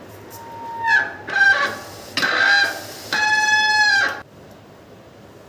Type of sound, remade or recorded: recorded